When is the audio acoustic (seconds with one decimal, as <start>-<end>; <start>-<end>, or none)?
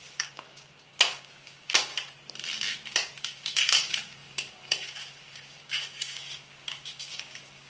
1.9-3.2